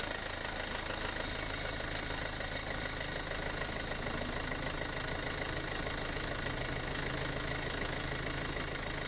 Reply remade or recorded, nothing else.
recorded